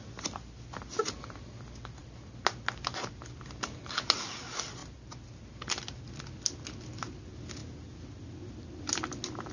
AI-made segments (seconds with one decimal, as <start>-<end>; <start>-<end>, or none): none